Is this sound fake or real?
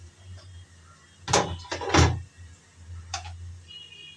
real